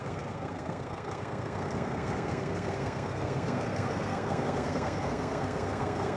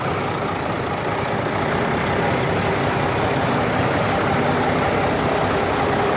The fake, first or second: first